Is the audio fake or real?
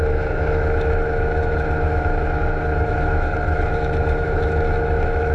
fake